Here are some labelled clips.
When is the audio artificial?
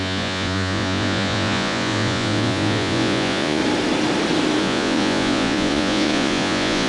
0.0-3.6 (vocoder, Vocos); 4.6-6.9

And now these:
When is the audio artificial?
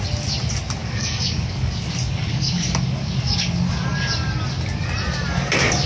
0.8-4.3 (codec, DAC)